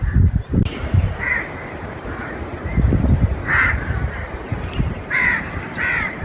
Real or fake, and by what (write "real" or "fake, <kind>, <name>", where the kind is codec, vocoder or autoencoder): fake, vocoder, BigVGAN v2